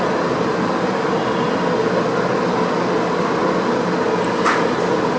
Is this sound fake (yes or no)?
no